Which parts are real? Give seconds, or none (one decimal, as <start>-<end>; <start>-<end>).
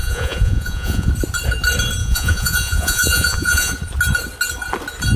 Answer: 1.1-2.0; 3.7-5.2